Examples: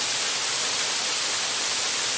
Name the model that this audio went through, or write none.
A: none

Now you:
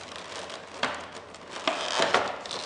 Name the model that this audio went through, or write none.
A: none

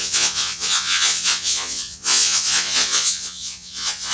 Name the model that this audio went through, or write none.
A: vocoder, Vocos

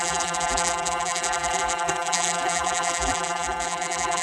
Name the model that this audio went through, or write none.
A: vocoder, BigVGAN v2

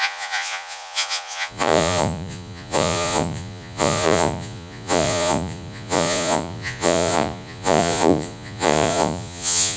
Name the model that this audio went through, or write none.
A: vocoder, Vocos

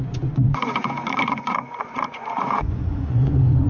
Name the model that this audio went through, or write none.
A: vocoder, Vocos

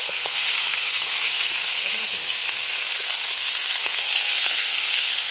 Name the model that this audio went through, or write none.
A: codec, SNAC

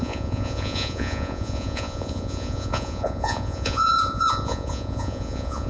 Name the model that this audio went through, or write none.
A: vocoder, Vocos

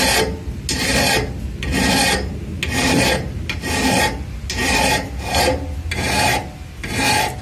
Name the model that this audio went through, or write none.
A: none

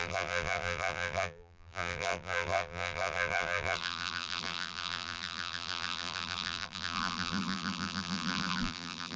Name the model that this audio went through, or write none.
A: vocoder, BigVGAN v2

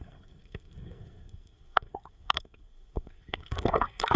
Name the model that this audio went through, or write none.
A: codec, SNAC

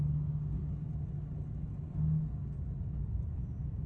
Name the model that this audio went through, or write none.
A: none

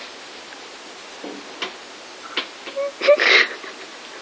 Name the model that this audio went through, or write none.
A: none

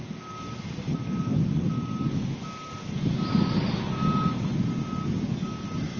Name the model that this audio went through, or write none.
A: none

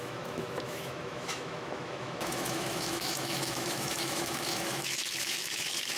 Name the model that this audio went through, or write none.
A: autoencoder, DAC-VAE